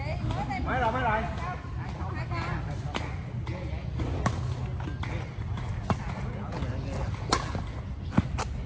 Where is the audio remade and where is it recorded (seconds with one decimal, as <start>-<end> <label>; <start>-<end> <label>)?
0.0-8.7 recorded